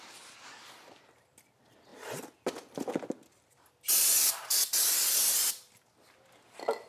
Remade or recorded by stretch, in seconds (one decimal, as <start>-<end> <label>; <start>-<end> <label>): 0.0-6.9 recorded